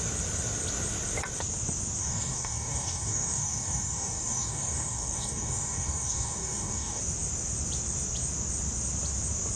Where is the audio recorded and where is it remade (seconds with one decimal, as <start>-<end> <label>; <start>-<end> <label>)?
0.0-2.0 recorded; 2.0-7.0 remade; 7.0-9.6 recorded